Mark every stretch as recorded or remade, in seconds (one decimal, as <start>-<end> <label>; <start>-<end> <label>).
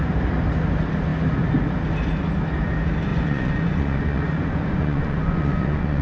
0.0-3.1 recorded; 3.1-6.0 remade